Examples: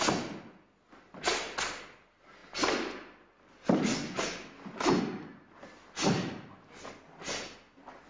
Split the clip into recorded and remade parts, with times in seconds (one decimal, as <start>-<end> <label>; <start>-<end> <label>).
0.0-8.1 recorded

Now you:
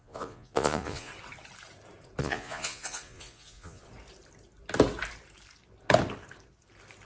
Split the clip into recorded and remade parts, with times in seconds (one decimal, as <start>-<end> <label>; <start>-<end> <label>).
0.0-1.1 remade; 1.1-2.2 recorded; 2.2-3.8 remade; 3.8-7.1 recorded

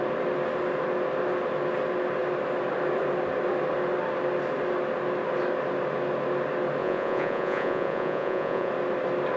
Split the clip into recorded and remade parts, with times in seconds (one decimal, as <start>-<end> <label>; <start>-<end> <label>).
0.0-6.8 recorded; 6.8-8.7 remade; 8.7-9.4 recorded

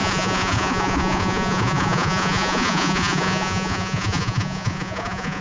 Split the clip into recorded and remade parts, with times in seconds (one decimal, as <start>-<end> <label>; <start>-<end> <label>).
0.0-5.4 remade